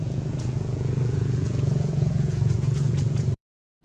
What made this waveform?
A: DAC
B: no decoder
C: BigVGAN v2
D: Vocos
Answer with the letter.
D